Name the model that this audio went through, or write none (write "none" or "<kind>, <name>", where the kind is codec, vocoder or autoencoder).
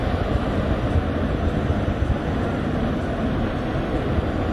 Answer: none